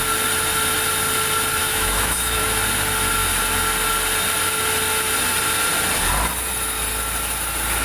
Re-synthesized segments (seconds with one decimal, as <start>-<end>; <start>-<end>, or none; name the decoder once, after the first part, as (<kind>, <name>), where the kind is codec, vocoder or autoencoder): 1.6-2.4 (autoencoder, DAC-VAE)